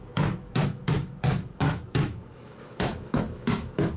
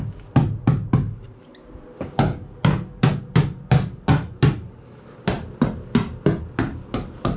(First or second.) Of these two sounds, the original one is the second